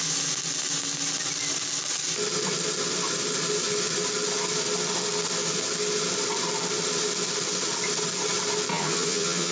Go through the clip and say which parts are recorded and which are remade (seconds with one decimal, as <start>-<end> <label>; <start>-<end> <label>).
0.0-8.7 recorded; 8.7-9.5 remade